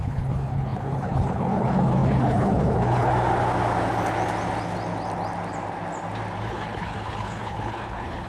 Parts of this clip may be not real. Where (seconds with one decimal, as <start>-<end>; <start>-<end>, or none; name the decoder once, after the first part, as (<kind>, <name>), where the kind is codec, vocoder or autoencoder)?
0.0-3.1 (codec, HILCodec); 6.5-8.3